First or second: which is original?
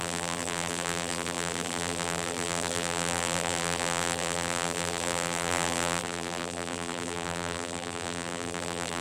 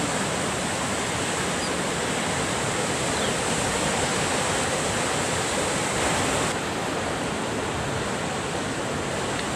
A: second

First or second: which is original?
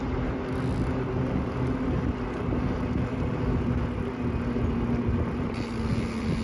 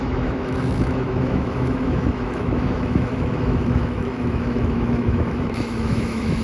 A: first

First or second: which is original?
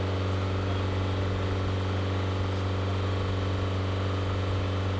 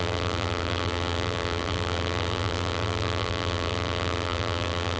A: first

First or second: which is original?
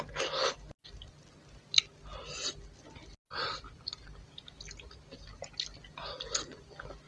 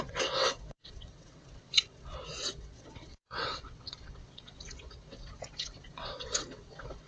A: first